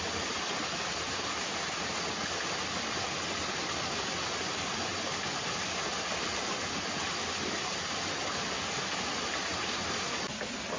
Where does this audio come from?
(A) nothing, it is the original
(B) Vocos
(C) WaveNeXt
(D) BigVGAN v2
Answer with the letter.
A